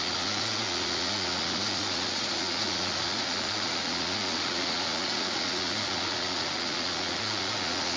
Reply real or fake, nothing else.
fake